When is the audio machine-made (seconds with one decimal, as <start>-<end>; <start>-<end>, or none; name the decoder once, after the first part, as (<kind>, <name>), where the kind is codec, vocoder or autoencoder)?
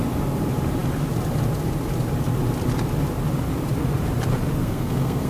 4.6-5.3 (codec, SNAC)